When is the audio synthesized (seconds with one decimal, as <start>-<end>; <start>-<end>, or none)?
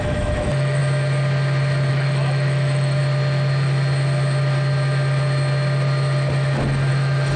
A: 0.0-0.8; 1.9-3.0; 6.9-7.4